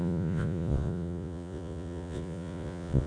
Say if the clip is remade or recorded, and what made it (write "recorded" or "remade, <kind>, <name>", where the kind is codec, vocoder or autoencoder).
remade, vocoder, Vocos